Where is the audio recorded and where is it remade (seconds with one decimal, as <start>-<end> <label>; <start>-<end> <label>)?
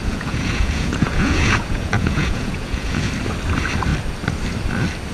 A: 0.0-3.1 remade; 3.1-5.1 recorded